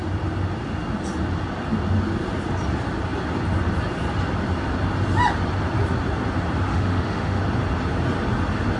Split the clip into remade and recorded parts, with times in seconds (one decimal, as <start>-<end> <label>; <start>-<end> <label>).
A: 0.0-6.7 recorded; 6.7-7.4 remade; 7.4-8.8 recorded